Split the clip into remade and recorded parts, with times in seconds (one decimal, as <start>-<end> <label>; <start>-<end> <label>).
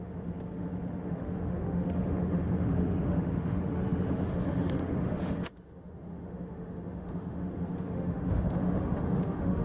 0.0-9.6 remade